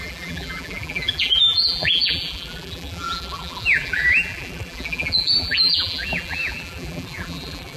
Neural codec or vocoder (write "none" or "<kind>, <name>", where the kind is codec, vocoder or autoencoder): vocoder, BigVGAN v2